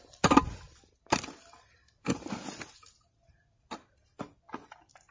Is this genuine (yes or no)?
yes